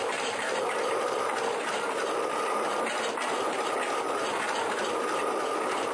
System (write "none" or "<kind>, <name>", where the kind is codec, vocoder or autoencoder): none